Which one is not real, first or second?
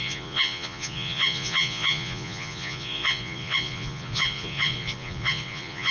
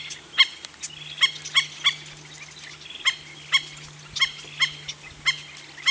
first